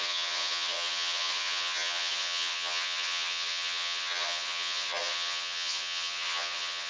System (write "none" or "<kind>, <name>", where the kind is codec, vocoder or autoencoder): vocoder, HiFi-GAN